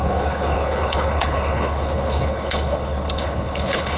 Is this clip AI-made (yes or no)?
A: yes